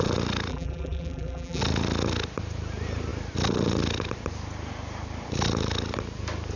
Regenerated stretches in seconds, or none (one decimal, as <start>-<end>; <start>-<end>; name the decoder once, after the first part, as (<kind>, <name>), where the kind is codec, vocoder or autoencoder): 0.5-1.6 (vocoder, BigVGAN v2)